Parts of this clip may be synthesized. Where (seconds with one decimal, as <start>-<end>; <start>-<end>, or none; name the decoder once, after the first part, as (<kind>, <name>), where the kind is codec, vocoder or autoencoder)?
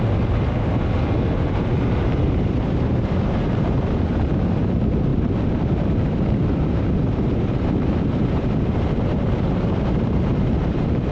0.0-11.1 (vocoder, BigVGAN v2)